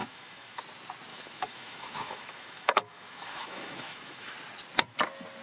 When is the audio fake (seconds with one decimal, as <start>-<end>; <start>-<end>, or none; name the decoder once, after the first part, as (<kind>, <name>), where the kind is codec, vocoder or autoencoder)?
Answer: 0.0-0.6 (autoencoder, DAC-VAE); 1.1-4.3